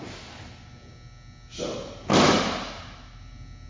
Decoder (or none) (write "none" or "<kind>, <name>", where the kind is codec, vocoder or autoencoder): none